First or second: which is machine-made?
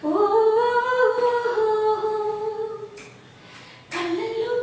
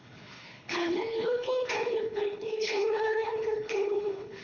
second